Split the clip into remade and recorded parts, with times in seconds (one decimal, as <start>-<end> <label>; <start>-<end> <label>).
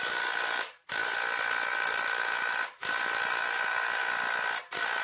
0.0-1.0 remade; 1.0-1.7 recorded; 1.7-4.0 remade; 4.0-4.6 recorded; 4.6-5.0 remade